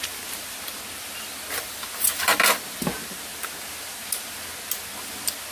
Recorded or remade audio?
recorded